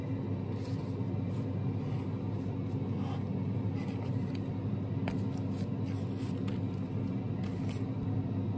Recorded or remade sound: recorded